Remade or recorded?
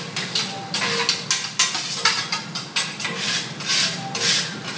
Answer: recorded